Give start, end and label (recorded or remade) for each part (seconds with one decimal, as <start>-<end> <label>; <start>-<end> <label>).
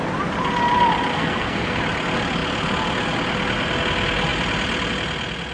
0.0-1.1 recorded; 1.1-1.8 remade; 1.8-5.5 recorded